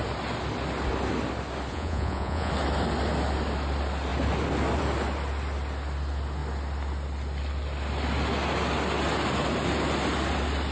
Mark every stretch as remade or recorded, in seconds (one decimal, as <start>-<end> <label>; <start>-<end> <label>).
0.0-1.7 recorded; 1.7-2.5 remade; 2.5-10.7 recorded